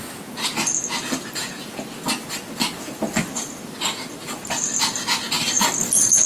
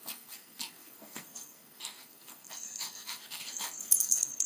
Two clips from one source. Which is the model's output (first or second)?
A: second